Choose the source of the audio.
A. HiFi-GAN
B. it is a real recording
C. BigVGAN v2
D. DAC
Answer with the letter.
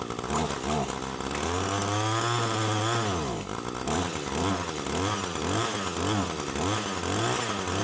B